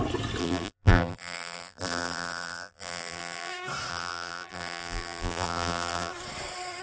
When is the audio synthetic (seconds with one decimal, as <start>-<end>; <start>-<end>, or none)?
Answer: 0.4-3.5; 3.9-6.1